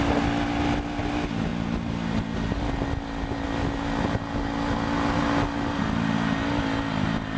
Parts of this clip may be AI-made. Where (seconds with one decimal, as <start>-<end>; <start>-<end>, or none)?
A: none